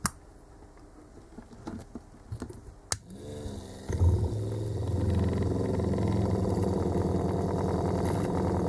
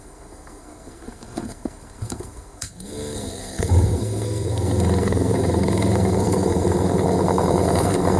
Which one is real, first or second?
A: first